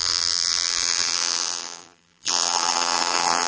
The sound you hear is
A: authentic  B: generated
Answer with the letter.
B